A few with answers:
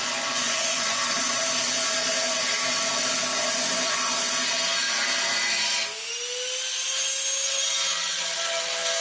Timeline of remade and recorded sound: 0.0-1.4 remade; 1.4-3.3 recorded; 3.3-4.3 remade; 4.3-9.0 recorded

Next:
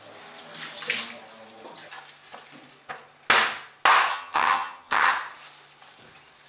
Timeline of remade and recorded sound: 0.0-4.1 recorded; 4.1-5.1 remade; 5.1-6.5 recorded

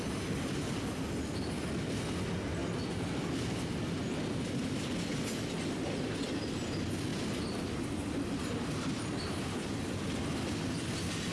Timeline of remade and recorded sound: 0.0-11.3 recorded

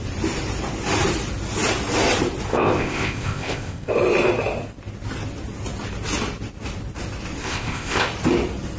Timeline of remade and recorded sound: 0.0-2.5 recorded; 2.5-3.9 remade; 3.9-7.4 recorded; 7.4-8.1 remade; 8.1-8.8 recorded

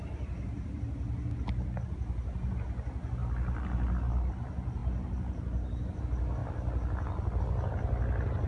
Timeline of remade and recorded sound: 0.0-8.5 recorded